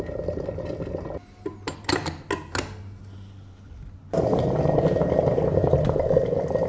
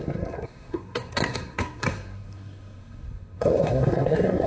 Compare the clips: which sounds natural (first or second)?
first